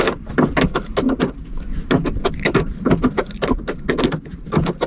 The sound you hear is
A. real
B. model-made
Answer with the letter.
A